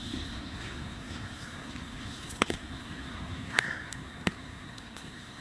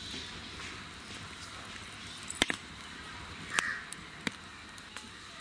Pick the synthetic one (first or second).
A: first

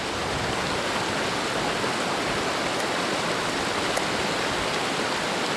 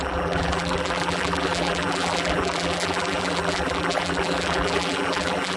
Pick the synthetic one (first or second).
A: second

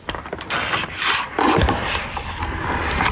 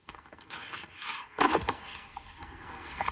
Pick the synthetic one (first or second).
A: second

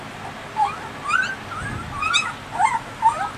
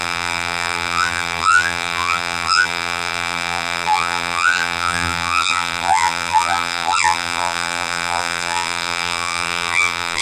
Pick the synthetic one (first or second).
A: second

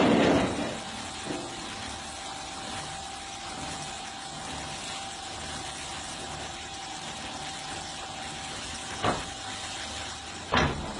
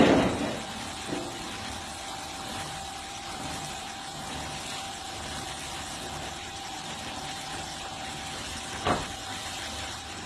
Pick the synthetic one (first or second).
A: second